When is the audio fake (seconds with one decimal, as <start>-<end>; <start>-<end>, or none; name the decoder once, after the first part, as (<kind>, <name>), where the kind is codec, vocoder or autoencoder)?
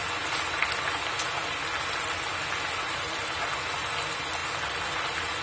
none